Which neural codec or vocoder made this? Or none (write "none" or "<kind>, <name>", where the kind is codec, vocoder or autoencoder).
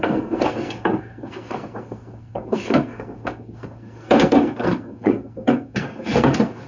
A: codec, SNAC